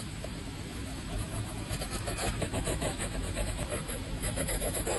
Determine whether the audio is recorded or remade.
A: remade